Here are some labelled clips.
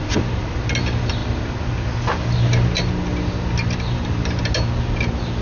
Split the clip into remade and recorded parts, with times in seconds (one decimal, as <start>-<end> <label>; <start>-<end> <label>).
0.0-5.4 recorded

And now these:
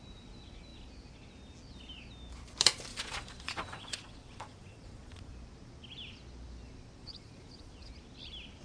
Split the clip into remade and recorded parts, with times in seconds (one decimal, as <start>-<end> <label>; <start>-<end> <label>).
0.0-2.9 recorded; 2.9-5.3 remade; 5.3-7.0 recorded; 7.0-7.9 remade; 7.9-8.6 recorded

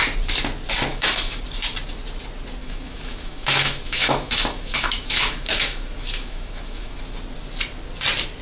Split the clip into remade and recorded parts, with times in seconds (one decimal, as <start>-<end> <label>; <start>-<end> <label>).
0.0-0.9 recorded; 0.9-1.4 remade; 1.4-2.6 recorded; 2.6-7.0 remade; 7.0-8.4 recorded

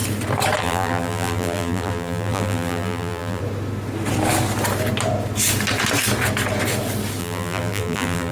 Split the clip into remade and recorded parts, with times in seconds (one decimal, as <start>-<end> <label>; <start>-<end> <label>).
0.0-0.6 recorded; 0.6-3.4 remade; 3.4-7.2 recorded; 7.2-8.3 remade

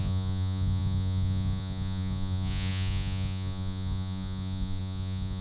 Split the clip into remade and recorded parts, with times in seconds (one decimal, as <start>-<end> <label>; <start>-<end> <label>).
0.0-5.4 remade